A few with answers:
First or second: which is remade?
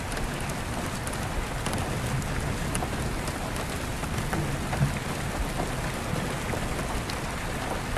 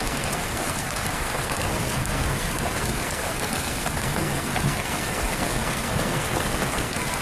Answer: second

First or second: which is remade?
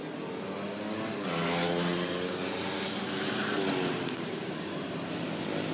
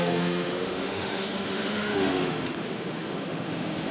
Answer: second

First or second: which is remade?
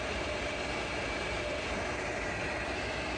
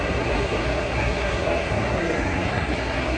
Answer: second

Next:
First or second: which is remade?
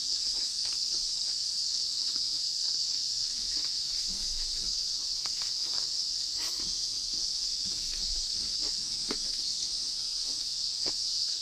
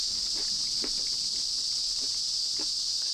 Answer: first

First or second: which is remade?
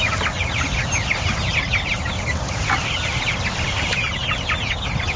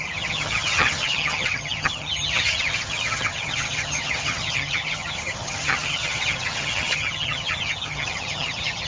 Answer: second